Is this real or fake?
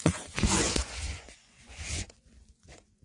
fake